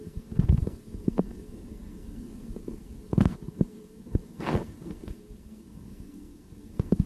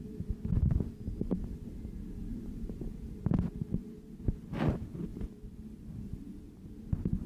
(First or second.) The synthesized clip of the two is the first